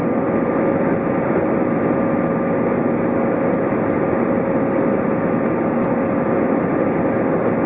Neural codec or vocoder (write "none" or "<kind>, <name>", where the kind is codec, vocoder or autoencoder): none